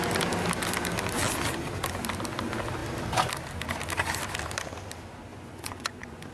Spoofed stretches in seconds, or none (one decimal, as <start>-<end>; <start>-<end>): 5.3-6.3